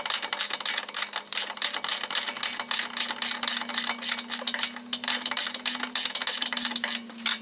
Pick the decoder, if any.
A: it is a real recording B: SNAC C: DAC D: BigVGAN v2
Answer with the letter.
A